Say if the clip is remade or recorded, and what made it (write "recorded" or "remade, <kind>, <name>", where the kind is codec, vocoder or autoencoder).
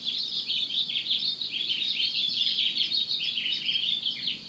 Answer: remade, vocoder, Vocos